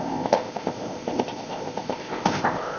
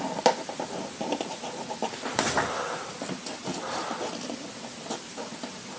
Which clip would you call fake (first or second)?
first